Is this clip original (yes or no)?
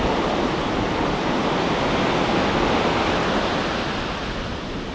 yes